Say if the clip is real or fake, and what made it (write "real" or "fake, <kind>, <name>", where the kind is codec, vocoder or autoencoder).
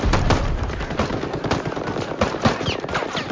real